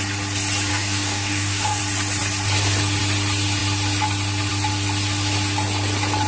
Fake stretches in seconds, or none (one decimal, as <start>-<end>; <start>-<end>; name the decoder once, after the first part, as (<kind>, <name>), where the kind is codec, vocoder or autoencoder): 0.7-1.8 (codec, DAC)